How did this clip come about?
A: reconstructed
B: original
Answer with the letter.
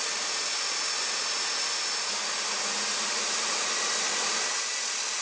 B